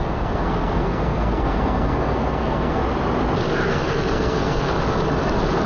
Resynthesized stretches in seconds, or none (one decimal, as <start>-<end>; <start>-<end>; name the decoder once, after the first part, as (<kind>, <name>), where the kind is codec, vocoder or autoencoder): 0.0-2.8 (codec, SNAC); 3.7-4.7